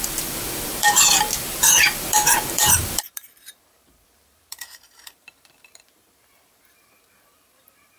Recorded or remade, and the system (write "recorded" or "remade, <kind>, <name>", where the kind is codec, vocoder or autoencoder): remade, vocoder, BigVGAN v2